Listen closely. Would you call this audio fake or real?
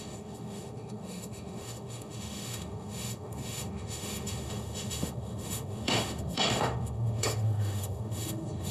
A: fake